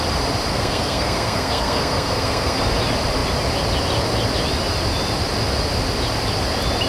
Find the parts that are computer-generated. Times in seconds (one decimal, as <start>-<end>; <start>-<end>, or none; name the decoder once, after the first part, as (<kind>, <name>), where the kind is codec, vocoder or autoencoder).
0.5-2.6 (codec, SNAC)